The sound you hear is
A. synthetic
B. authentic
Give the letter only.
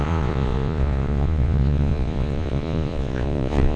A